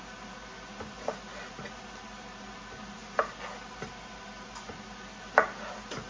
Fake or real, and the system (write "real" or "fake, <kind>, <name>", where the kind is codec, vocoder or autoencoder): real